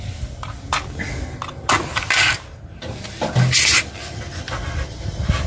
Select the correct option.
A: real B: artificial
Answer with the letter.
A